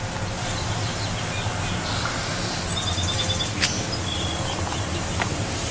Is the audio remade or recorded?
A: recorded